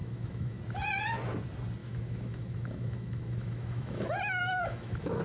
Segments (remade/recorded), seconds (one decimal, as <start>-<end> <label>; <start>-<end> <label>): 0.0-0.6 remade; 0.6-1.8 recorded; 1.8-5.2 remade